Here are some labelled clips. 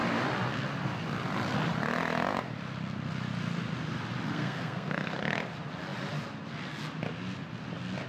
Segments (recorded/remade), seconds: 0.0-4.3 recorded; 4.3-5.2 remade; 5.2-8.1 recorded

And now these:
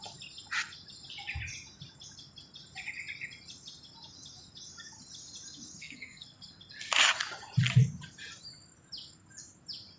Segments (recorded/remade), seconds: 0.0-5.8 recorded; 5.8-6.5 remade; 6.5-10.0 recorded

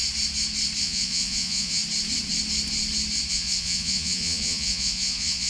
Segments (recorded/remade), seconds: 0.0-0.8 recorded; 0.8-1.8 remade; 1.8-3.3 recorded; 3.3-5.5 remade